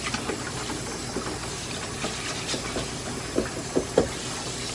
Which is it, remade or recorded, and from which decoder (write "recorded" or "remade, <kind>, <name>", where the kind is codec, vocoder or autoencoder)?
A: recorded